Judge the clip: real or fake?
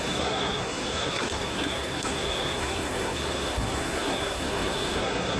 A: fake